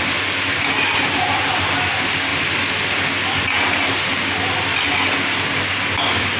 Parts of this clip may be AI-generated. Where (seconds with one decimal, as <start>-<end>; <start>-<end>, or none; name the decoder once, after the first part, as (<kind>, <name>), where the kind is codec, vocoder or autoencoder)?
none